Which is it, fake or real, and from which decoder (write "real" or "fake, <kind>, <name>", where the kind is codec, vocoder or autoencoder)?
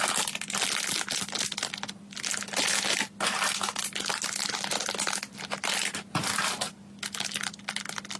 real